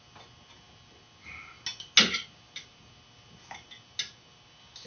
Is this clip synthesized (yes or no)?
no